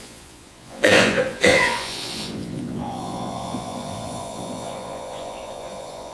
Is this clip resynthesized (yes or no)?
yes